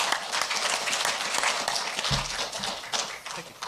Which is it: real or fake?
real